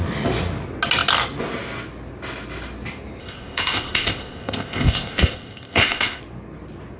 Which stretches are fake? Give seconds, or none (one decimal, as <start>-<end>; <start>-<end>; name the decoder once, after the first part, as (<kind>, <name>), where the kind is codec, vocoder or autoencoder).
3.2-6.2 (codec, ZipCodec)

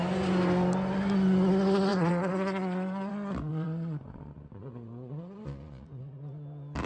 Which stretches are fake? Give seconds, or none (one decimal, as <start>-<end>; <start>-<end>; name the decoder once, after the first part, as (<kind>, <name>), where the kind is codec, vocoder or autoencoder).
1.9-3.1 (vocoder, Vocos); 3.5-6.0

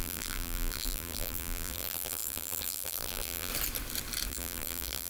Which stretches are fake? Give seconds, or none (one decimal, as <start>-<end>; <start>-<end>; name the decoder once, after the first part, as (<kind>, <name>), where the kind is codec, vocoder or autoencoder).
0.0-3.5 (vocoder, BigVGAN v2); 4.3-5.1

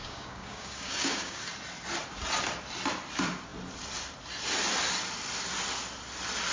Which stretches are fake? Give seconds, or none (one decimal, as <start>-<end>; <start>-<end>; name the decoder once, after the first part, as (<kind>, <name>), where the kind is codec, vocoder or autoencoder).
0.0-1.4 (codec, DAC)

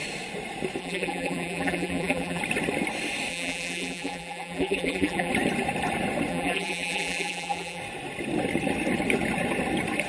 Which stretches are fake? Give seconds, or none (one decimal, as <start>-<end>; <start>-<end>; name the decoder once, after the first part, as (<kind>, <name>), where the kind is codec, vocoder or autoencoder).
0.8-2.4 (vocoder, BigVGAN v2); 3.3-5.3; 6.3-7.8

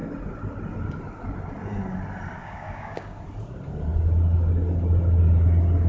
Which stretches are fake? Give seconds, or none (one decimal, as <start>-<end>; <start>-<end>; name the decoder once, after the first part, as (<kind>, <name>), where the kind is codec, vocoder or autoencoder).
2.4-3.2 (codec, DAC)